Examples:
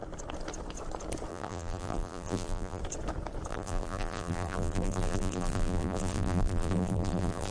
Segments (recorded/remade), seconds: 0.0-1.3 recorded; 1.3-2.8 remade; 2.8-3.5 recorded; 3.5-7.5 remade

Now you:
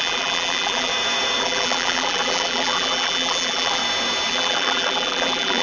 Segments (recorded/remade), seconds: 0.0-0.9 remade; 0.9-1.4 recorded; 1.4-3.8 remade; 3.8-4.3 recorded; 4.3-5.6 remade

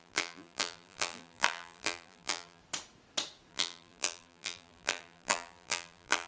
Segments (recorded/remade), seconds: 0.0-2.6 remade; 2.6-3.5 recorded; 3.5-6.3 remade

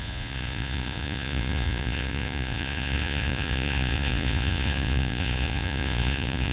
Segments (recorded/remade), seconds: 0.0-6.5 remade

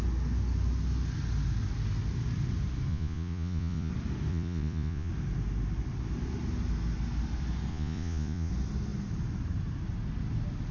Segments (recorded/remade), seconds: 0.0-2.9 recorded; 2.9-3.9 remade; 3.9-4.3 recorded; 4.3-5.1 remade; 5.1-7.7 recorded; 7.7-8.5 remade; 8.5-10.7 recorded